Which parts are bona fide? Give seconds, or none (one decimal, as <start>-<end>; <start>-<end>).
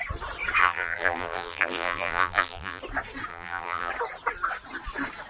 0.0-0.6; 2.8-3.3; 3.9-5.3